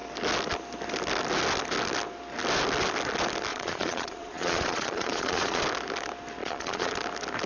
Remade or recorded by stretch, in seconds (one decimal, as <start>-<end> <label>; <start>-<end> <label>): 0.0-3.5 recorded; 3.5-5.6 remade; 5.6-6.4 recorded; 6.4-6.9 remade; 6.9-7.5 recorded